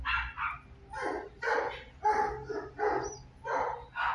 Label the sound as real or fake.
real